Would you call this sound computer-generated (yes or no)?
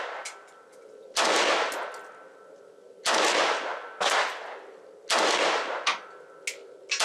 no